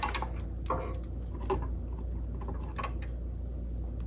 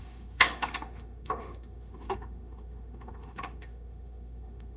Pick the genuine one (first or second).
first